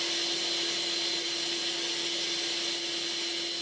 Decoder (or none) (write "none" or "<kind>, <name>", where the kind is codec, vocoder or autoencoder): none